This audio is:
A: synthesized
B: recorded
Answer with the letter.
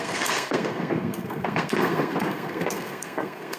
A